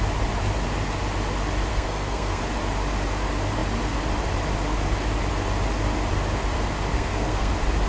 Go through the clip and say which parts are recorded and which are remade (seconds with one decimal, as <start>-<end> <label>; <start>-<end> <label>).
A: 0.0-1.7 recorded; 1.7-2.4 remade; 2.4-6.9 recorded; 6.9-7.5 remade; 7.5-7.9 recorded